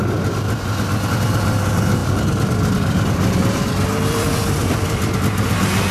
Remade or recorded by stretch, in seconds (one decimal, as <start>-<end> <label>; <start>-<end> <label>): 0.0-2.0 recorded; 2.0-5.5 remade; 5.5-5.9 recorded